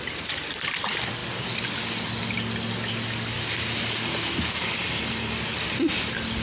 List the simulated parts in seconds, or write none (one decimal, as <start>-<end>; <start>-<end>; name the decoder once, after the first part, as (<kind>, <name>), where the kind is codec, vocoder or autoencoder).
none